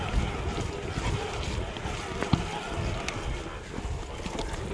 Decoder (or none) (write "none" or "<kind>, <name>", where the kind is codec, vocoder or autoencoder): none